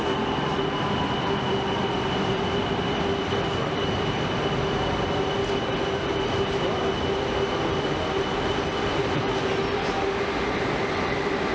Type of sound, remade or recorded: recorded